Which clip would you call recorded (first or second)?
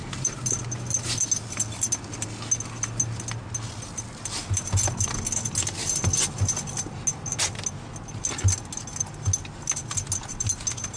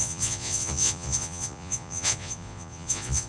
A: first